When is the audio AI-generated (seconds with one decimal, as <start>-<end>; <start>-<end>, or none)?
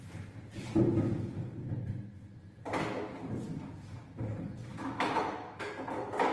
4.7-5.7